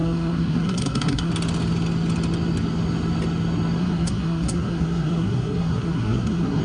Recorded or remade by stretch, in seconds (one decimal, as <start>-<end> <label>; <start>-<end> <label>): 0.0-1.3 remade; 1.3-3.8 recorded; 3.8-6.6 remade